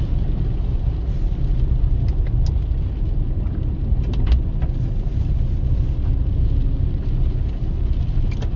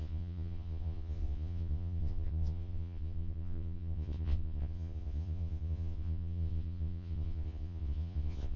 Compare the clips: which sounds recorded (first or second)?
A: first